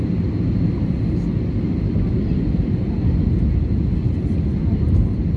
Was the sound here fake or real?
real